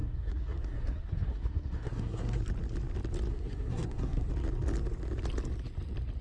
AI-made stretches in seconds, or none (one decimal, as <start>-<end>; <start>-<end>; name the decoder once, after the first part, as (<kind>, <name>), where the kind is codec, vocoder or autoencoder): 0.0-2.4 (codec, SNAC); 3.3-4.3